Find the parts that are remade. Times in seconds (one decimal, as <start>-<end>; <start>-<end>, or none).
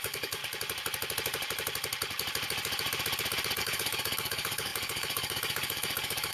0.0-0.4; 3.6-6.3